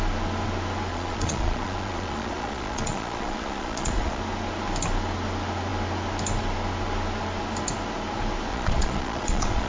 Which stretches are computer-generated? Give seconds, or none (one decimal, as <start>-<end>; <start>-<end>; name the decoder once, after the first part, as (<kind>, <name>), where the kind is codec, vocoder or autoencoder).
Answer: 0.9-4.2 (vocoder, Vocos); 8.5-9.7